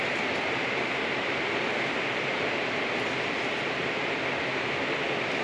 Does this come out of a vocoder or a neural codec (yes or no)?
no